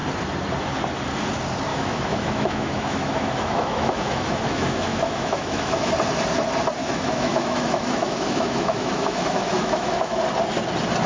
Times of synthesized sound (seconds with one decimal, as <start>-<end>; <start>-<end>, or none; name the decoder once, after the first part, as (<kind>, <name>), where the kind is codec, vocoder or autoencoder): 1.7-5.9 (autoencoder, DAC-VAE); 6.8-10.2